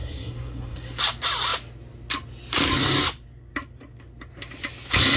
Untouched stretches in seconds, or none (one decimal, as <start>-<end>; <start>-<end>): 1.0-5.2